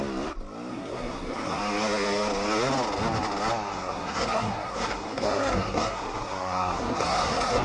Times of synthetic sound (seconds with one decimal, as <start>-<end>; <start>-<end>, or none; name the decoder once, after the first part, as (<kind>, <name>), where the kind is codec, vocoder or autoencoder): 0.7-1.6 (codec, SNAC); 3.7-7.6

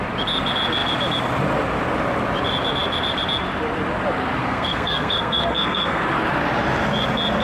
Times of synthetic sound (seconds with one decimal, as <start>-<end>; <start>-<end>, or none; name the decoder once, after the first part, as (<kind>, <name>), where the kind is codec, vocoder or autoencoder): 4.4-6.0 (codec, SNAC)

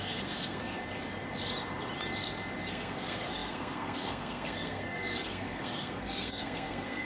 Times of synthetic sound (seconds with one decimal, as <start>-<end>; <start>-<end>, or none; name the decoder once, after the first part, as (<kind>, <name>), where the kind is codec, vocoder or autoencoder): 0.0-0.8 (codec, SNAC); 2.7-7.0

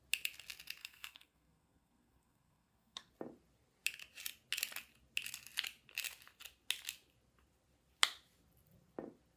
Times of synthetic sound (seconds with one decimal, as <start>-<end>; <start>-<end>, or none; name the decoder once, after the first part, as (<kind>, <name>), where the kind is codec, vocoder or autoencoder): 0.8-3.1 (codec, SNAC)